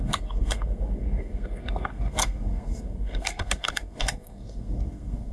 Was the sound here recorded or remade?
remade